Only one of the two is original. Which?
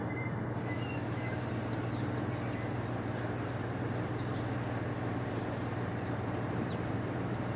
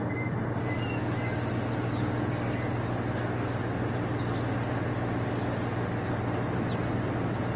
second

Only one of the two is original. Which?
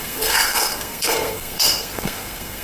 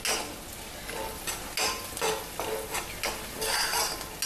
second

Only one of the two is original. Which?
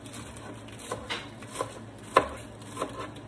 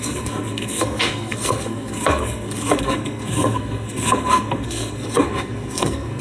first